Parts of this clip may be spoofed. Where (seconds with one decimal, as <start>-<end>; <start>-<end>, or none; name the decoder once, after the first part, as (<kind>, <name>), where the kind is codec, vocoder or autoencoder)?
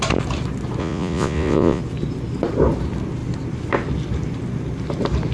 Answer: 0.8-1.8 (vocoder, Vocos)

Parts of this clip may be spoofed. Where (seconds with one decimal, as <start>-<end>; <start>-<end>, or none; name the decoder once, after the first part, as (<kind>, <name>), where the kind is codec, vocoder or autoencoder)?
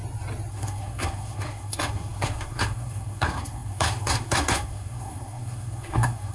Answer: 0.5-6.3 (codec, SNAC)